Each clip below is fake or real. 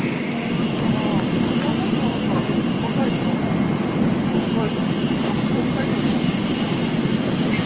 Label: real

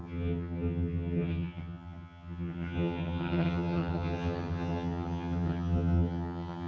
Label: fake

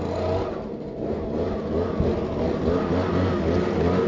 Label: real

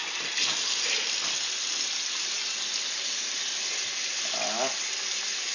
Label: real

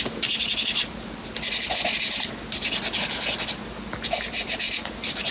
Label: real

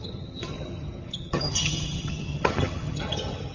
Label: fake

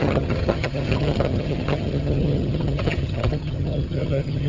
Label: fake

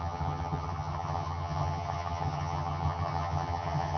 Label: fake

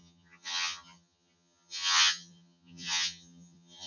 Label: fake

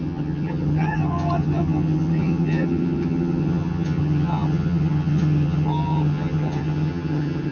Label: fake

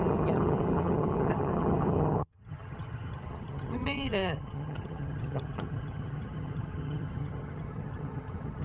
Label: fake